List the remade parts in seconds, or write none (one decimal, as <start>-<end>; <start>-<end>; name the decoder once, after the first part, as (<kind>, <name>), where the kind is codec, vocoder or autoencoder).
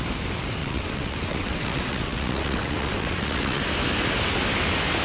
0.6-3.6 (vocoder, WaveNeXt)